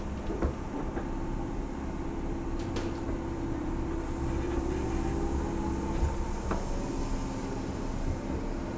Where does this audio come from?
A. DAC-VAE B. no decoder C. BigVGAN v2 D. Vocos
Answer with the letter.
B